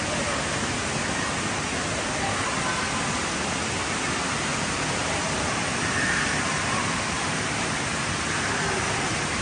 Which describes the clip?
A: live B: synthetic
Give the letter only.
A